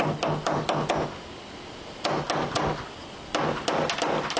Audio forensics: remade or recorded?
recorded